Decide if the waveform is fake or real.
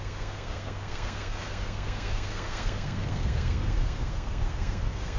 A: fake